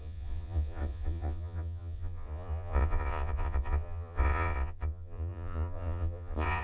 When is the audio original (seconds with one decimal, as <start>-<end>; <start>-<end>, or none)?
none